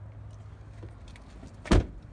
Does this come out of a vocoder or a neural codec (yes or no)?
no